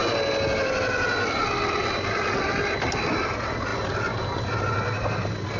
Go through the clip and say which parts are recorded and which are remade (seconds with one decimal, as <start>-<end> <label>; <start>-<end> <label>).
0.0-5.6 recorded